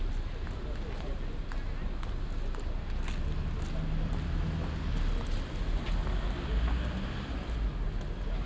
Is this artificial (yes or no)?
no